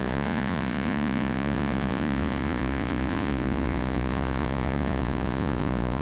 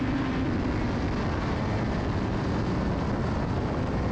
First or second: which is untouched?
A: second